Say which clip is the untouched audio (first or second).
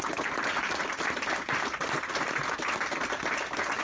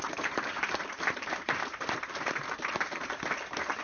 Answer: first